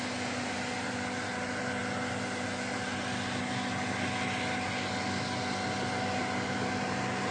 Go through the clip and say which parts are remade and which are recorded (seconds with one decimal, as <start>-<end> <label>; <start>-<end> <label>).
0.0-7.3 recorded